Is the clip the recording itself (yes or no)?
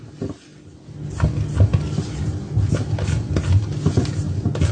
yes